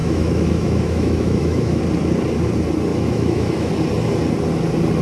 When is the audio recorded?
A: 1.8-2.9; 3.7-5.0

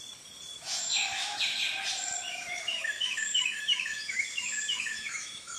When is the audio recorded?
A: 0.0-0.5; 1.4-2.3